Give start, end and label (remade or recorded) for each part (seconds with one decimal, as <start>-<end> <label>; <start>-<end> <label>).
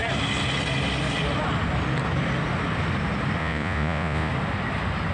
0.0-3.4 recorded; 3.4-4.3 remade; 4.3-5.1 recorded